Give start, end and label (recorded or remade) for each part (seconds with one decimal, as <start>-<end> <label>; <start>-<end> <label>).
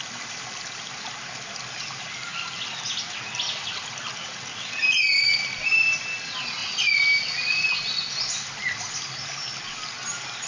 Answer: 0.0-10.5 recorded